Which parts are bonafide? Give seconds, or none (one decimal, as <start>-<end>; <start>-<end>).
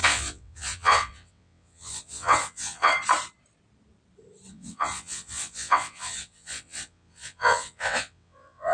2.9-4.5